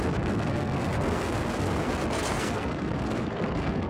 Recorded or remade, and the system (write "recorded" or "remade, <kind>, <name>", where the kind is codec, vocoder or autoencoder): remade, codec, SNAC